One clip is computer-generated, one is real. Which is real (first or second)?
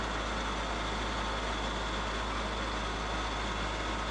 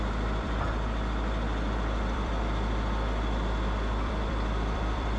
first